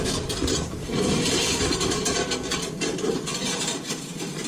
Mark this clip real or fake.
fake